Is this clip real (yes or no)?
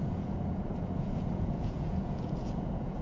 no